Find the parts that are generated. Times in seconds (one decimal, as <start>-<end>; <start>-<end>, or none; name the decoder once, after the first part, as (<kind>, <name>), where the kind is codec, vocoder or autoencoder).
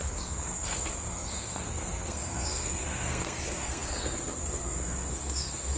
0.0-5.8 (codec, SNAC)